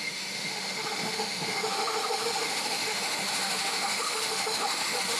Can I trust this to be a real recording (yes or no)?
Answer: no